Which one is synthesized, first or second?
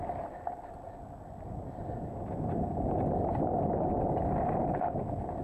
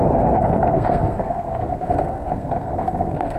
second